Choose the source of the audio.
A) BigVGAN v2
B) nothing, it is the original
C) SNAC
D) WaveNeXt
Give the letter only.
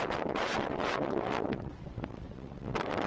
D